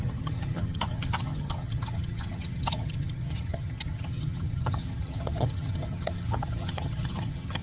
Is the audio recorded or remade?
remade